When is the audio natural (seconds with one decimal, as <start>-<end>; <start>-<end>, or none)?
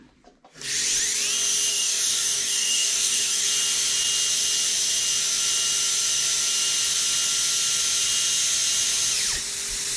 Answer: 0.0-1.7; 3.5-10.0